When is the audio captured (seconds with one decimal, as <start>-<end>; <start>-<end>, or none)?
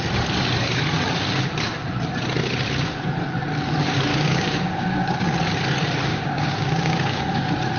0.0-4.1; 5.2-6.1; 7.2-7.8